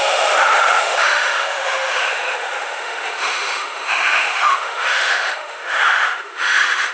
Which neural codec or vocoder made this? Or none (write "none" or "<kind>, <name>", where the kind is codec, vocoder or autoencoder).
autoencoder, DAC-VAE